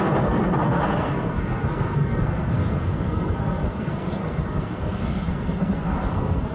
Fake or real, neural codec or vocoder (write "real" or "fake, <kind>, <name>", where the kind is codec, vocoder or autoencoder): fake, codec, SNAC